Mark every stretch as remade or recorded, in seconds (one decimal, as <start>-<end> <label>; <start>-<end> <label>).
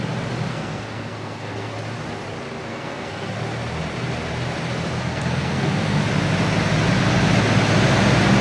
0.0-0.5 recorded; 0.5-1.7 remade; 1.7-2.7 recorded; 2.7-3.4 remade; 3.4-5.1 recorded; 5.1-6.0 remade; 6.0-8.4 recorded